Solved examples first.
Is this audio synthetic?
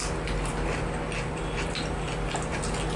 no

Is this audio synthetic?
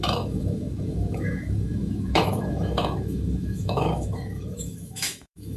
yes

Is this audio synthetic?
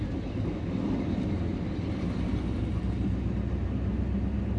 no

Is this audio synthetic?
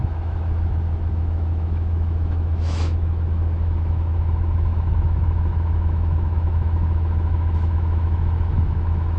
yes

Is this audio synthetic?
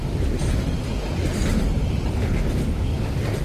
no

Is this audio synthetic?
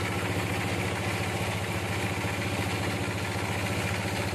no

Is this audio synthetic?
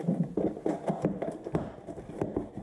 no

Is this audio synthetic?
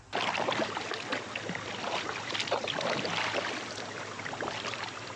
no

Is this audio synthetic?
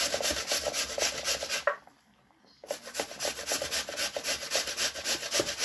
no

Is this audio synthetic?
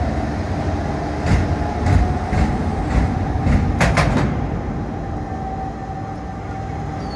no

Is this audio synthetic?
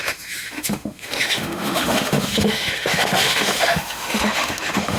yes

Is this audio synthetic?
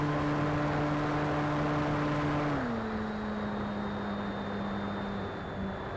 no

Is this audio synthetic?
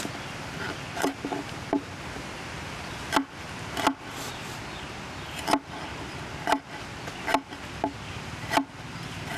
no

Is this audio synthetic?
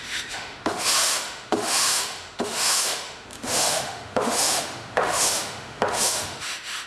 yes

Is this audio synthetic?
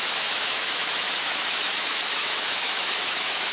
yes